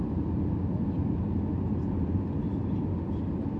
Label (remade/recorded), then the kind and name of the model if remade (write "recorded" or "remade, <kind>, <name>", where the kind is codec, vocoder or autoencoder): recorded